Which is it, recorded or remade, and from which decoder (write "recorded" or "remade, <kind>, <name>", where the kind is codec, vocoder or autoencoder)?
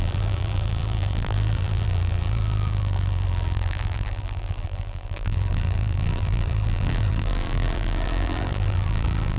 remade, vocoder, BigVGAN v2